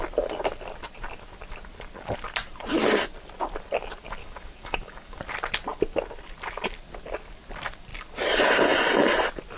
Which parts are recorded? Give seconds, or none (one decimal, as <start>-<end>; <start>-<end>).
0.0-4.2; 5.2-9.6

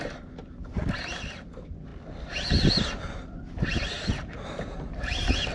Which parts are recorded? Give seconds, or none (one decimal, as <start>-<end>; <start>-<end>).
0.0-5.5

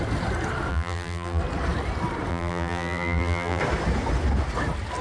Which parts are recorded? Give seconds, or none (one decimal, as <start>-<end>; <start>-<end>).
0.0-0.7; 1.4-2.3; 3.6-5.0

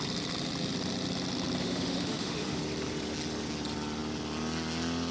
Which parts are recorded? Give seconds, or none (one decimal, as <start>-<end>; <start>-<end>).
0.0-1.6; 2.6-5.1